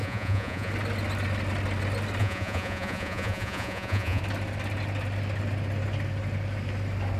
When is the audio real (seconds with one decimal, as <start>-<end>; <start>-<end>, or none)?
0.7-2.2; 4.2-7.2